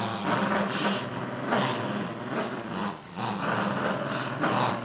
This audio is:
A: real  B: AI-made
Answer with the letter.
A